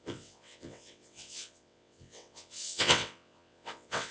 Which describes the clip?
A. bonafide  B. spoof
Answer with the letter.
B